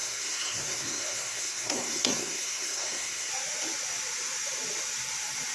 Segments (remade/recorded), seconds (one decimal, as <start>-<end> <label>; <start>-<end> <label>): 0.0-3.3 remade; 3.3-5.5 recorded